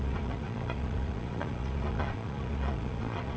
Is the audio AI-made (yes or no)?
yes